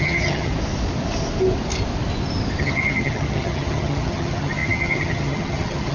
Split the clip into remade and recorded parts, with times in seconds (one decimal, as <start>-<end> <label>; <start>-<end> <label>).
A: 0.0-0.5 remade; 0.5-2.6 recorded; 2.6-5.9 remade